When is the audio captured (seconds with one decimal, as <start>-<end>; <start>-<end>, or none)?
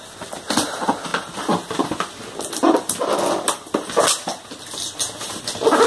0.0-5.9